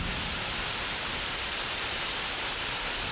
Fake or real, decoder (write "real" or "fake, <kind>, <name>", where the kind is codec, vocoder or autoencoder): fake, vocoder, BigVGAN v2